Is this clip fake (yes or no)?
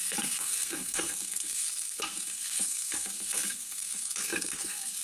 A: yes